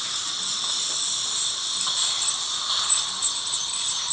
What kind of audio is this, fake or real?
real